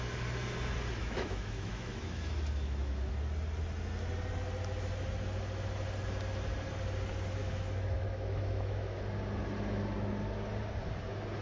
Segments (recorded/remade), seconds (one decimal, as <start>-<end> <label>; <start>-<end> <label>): 0.0-1.0 recorded; 1.0-3.1 remade; 3.1-7.4 recorded; 7.4-9.0 remade; 9.0-11.4 recorded